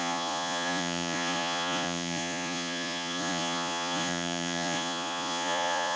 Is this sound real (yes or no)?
no